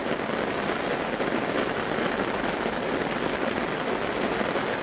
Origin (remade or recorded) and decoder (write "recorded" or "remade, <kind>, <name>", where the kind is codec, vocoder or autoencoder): recorded